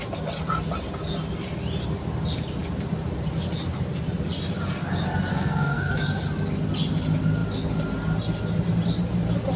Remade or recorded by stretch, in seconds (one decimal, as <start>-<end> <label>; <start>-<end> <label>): 0.0-5.3 recorded; 5.3-5.9 remade; 5.9-9.6 recorded

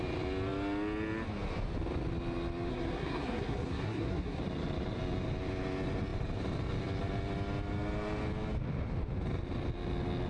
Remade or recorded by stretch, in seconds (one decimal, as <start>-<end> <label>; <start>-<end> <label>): 0.0-2.7 recorded; 2.7-4.4 remade; 4.4-10.3 recorded

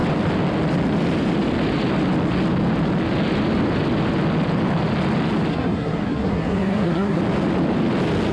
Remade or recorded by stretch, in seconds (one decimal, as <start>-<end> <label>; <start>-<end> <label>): 0.0-5.5 recorded; 5.5-7.2 remade; 7.2-8.3 recorded

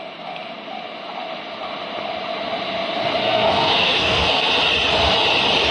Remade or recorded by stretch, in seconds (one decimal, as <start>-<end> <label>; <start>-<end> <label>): 0.0-3.2 recorded; 3.2-4.5 remade; 4.5-5.7 recorded

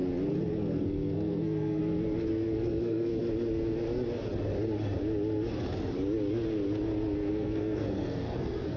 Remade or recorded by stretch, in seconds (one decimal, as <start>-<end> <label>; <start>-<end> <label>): 0.0-0.5 recorded; 0.5-1.8 remade; 1.8-2.3 recorded; 2.3-3.2 remade; 3.2-7.3 recorded; 7.3-8.8 remade